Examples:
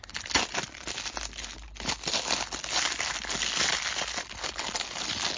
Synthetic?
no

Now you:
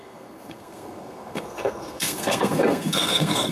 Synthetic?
yes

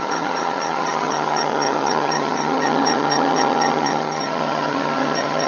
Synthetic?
yes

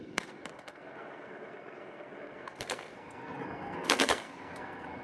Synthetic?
yes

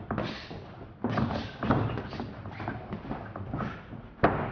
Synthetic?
no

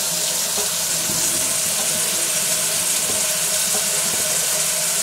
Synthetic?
no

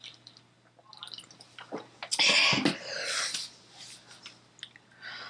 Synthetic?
no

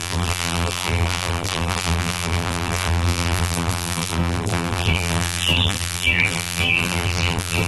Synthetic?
yes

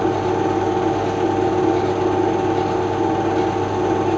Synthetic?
no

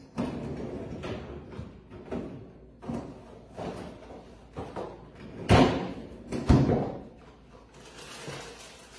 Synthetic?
no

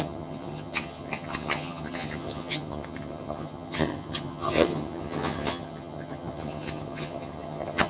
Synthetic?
yes